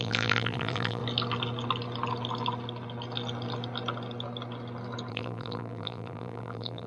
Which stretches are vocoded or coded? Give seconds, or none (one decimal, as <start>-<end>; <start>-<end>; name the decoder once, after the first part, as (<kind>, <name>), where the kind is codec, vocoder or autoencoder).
0.0-1.0 (vocoder, BigVGAN v2); 5.1-6.9